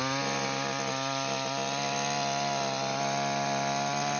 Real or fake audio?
real